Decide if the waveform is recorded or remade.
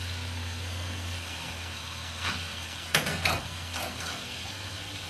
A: remade